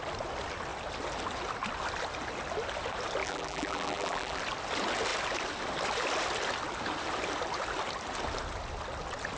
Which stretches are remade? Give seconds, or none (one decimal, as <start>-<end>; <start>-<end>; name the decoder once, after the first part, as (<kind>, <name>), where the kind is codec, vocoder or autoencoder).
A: 3.2-4.4 (vocoder, BigVGAN v2)

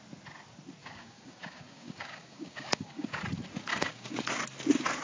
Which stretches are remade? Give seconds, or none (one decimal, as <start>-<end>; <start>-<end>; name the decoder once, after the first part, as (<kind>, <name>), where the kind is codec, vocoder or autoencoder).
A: 0.8-3.2 (codec, DAC); 3.7-4.3

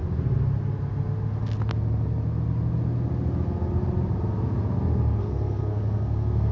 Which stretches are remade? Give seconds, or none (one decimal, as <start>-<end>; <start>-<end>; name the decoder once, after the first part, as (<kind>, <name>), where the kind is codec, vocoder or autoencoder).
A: 5.2-6.5 (codec, SNAC)

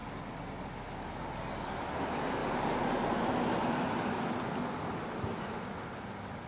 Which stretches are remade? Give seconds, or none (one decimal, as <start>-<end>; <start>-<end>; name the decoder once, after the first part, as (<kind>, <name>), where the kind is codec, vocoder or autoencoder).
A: none

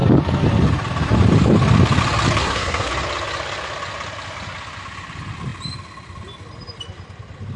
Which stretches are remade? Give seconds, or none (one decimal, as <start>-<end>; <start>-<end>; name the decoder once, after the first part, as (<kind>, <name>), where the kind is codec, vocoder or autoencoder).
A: 2.4-2.9 (codec, SNAC)

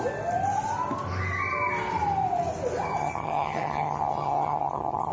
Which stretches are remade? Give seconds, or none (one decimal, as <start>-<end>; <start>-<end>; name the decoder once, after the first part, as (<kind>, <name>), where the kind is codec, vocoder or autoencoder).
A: 3.0-5.1 (vocoder, HiFi-GAN)

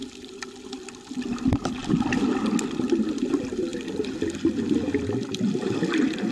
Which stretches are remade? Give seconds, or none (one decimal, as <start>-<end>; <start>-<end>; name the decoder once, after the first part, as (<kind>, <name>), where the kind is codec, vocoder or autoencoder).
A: 1.1-1.8 (vocoder, BigVGAN v2); 3.3-3.7; 5.6-6.3